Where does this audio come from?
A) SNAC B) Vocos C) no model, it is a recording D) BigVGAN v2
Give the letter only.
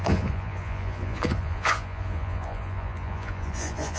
B